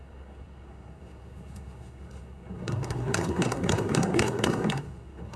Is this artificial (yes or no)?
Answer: yes